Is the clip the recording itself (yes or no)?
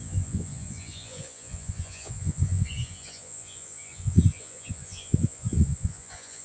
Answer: no